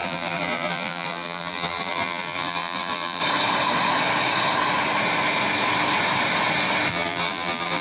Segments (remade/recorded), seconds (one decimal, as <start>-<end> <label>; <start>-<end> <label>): 0.0-3.2 remade; 3.2-6.9 recorded; 6.9-7.8 remade